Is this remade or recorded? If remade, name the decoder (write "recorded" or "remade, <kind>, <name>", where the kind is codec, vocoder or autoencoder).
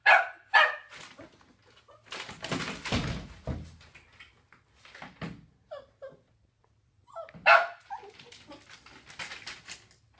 recorded